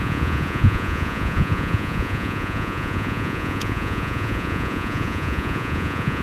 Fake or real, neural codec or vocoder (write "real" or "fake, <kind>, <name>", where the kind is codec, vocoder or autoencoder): fake, vocoder, Vocos